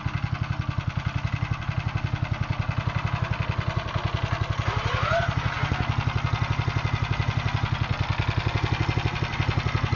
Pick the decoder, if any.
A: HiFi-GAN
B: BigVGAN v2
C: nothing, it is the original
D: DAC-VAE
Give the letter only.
C